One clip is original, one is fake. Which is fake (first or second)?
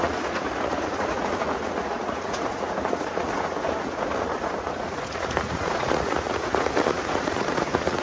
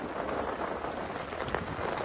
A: first